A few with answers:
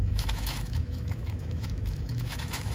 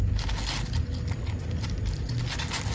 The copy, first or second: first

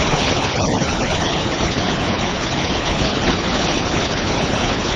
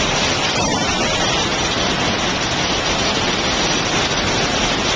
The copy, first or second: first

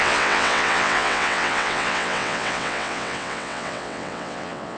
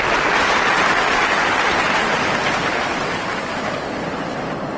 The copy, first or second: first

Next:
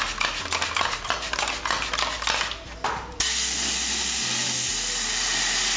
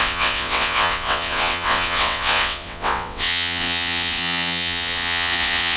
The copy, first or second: second